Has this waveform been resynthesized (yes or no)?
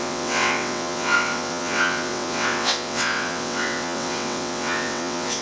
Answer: yes